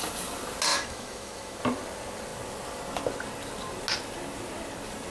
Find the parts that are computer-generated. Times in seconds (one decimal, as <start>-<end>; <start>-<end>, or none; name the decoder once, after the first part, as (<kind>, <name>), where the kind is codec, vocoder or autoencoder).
0.7-1.6 (autoencoder, DAC-VAE)